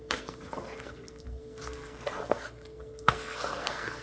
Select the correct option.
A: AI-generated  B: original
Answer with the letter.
A